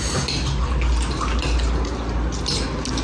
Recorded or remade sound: recorded